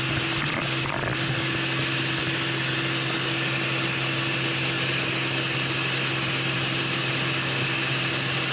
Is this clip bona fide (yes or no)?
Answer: yes